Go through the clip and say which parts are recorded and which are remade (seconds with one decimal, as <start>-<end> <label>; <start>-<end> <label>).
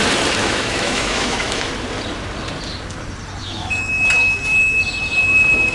0.0-0.4 recorded; 0.4-1.7 remade; 1.7-3.4 recorded; 3.4-3.9 remade; 3.9-5.7 recorded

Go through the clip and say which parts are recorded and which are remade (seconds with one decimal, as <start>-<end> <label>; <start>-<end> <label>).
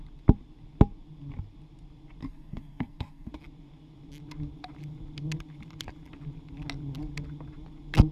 0.0-2.2 recorded; 2.2-3.3 remade; 3.3-8.1 recorded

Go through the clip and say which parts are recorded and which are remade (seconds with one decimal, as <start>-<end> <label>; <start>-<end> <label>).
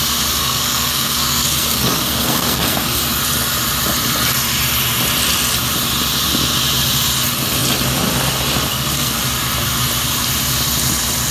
0.0-0.4 recorded; 0.4-3.0 remade; 3.0-8.7 recorded; 8.7-9.2 remade; 9.2-11.3 recorded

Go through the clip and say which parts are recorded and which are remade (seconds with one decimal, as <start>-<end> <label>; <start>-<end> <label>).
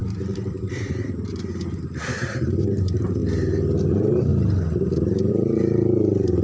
0.0-3.2 remade; 3.2-3.9 recorded; 3.9-4.3 remade; 4.3-5.3 recorded; 5.3-6.4 remade